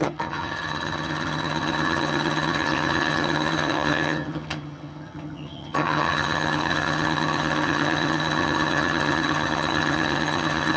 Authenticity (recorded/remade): remade